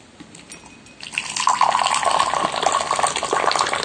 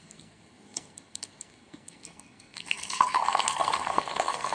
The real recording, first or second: first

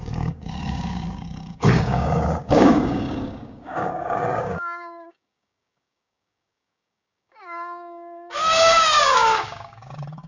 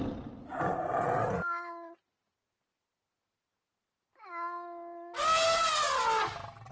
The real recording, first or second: second